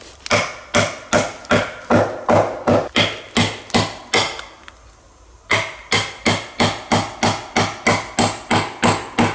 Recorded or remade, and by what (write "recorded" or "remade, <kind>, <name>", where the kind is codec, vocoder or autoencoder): recorded